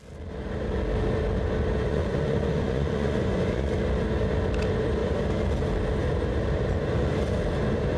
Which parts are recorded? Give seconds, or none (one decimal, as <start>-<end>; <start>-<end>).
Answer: 0.0-1.9; 3.7-8.0